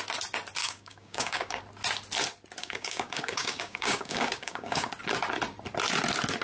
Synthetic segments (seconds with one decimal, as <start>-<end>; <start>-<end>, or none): 0.6-1.6; 2.6-4.9

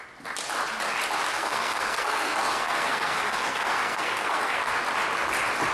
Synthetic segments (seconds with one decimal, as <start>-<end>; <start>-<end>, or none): 1.3-4.7

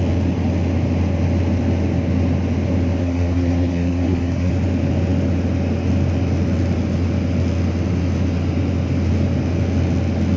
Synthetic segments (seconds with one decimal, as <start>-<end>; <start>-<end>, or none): 3.0-4.5

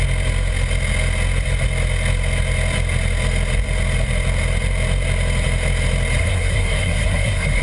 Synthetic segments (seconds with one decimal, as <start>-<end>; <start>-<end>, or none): 6.2-7.6

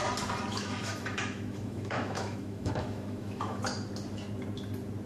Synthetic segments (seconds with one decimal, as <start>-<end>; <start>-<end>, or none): 0.5-3.6

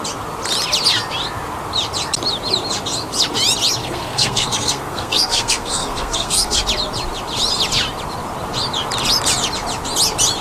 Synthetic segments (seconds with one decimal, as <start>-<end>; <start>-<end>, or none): 3.8-6.6

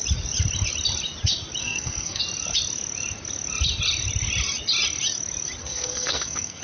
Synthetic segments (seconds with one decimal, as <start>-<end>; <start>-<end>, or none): 1.6-2.2; 5.6-6.6